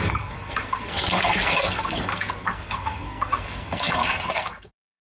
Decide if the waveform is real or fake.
fake